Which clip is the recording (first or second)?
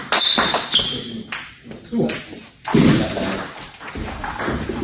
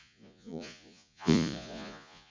first